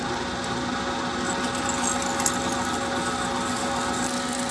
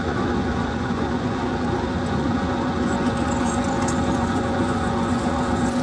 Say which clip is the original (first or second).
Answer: first